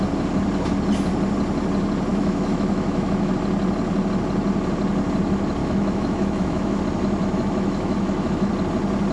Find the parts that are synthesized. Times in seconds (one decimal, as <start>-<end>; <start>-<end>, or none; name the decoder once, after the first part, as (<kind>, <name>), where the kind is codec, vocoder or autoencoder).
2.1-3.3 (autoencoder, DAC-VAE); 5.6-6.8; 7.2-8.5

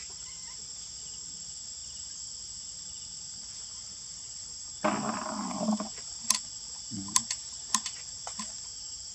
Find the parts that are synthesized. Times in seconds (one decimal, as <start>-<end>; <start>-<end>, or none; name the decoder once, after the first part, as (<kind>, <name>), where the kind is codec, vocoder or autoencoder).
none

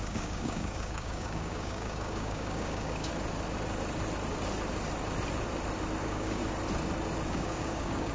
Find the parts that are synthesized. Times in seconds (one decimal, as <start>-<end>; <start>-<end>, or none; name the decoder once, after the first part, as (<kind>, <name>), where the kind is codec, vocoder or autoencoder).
0.0-3.1 (codec, DAC); 6.0-6.4; 7.3-8.1

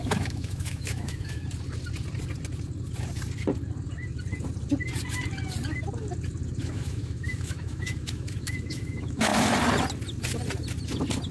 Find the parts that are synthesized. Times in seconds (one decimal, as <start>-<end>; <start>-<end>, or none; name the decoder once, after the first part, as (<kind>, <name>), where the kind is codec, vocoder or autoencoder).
0.0-1.4 (autoencoder, DAC-VAE); 6.6-9.3